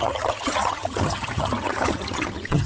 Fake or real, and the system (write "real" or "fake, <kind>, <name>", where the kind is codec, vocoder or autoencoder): fake, vocoder, HiFi-GAN